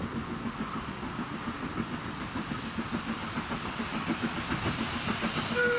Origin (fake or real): real